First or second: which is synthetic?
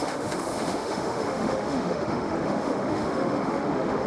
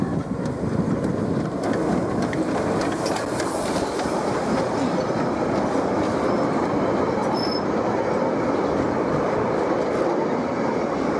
first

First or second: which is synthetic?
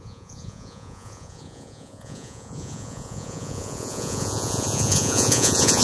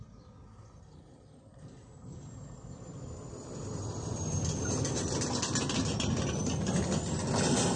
first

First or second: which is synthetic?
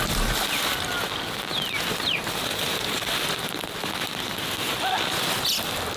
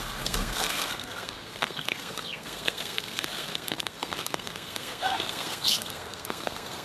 second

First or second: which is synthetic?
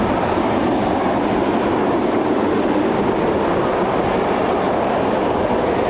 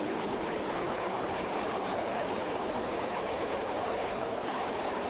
second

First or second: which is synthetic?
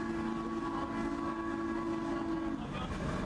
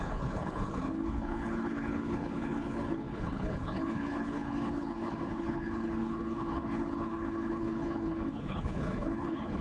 second